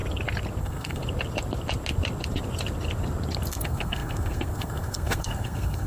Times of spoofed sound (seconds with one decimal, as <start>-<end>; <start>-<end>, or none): 0.6-1.0; 3.5-5.9